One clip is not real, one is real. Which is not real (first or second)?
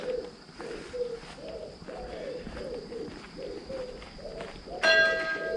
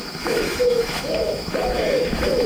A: second